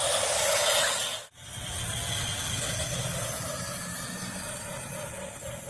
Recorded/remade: recorded